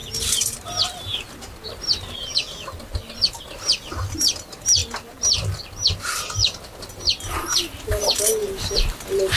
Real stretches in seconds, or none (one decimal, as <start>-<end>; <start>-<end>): 0.0-9.4